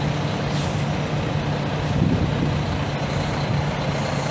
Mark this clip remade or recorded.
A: recorded